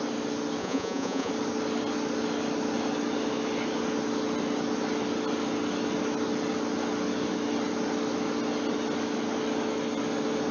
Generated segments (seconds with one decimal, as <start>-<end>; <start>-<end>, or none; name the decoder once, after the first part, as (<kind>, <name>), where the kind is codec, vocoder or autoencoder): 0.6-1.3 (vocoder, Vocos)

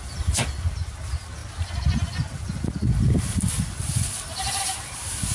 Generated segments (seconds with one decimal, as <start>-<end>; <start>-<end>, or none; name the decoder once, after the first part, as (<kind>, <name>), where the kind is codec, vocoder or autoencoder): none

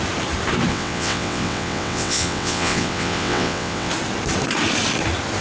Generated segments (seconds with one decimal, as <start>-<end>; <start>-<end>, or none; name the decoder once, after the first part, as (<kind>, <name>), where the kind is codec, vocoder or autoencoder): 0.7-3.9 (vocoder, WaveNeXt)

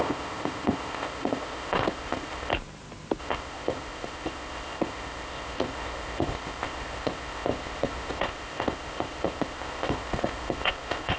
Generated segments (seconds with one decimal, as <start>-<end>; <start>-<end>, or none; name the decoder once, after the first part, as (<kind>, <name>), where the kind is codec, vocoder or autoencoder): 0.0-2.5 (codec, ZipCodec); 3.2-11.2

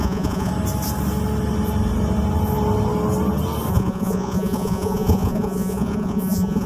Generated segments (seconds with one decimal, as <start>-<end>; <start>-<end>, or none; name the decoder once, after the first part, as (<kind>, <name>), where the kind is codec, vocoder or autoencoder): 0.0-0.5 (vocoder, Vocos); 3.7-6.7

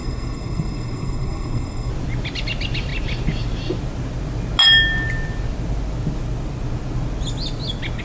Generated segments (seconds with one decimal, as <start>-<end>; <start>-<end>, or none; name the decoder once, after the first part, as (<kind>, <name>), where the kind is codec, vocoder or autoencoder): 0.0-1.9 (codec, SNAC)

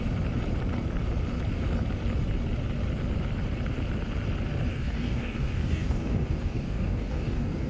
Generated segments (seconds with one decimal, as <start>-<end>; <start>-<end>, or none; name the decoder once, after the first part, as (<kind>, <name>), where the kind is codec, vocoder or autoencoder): 4.7-7.7 (codec, DAC)

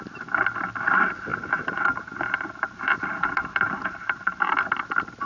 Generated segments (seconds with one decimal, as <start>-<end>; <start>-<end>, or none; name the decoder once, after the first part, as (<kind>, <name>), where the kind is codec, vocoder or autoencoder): 1.3-4.5 (vocoder, BigVGAN v2)